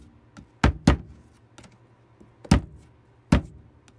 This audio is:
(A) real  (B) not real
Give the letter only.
A